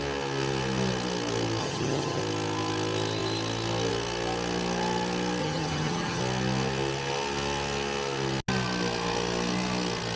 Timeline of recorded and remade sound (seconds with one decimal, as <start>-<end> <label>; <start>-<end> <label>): 0.0-1.6 recorded; 1.6-2.2 remade; 2.2-5.4 recorded; 5.4-6.2 remade; 6.2-10.2 recorded

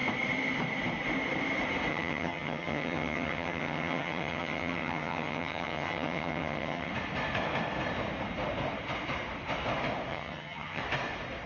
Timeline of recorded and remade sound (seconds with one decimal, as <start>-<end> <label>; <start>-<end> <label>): 0.0-1.9 recorded; 1.9-6.9 remade; 6.9-10.1 recorded; 10.1-10.8 remade; 10.8-11.5 recorded

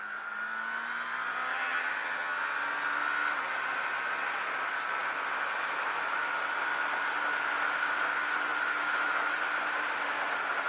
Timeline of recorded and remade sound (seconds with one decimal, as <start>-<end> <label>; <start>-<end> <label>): 0.0-1.5 recorded; 1.5-2.4 remade; 2.4-10.7 recorded

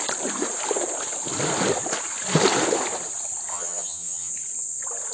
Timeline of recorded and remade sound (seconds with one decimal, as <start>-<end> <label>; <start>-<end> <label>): 0.0-3.5 recorded; 3.5-4.3 remade; 4.3-5.1 recorded

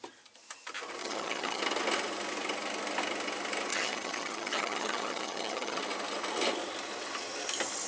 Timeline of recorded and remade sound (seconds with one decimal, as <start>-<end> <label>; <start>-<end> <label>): 0.0-1.0 recorded; 1.0-1.6 remade; 1.6-3.7 recorded; 3.7-5.8 remade; 5.8-7.9 recorded

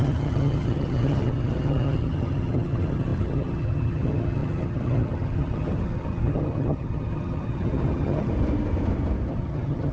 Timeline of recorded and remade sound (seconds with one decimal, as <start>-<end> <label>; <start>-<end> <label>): 0.0-8.3 remade; 8.3-9.3 recorded; 9.3-9.9 remade

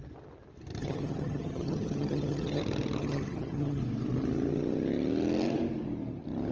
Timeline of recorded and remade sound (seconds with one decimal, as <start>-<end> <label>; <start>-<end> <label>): 0.0-0.8 recorded; 0.8-2.6 remade; 2.6-3.0 recorded; 3.0-3.8 remade; 3.8-6.5 recorded

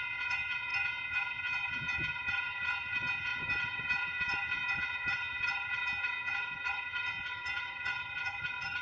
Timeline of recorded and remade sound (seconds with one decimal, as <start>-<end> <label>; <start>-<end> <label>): 0.0-8.8 remade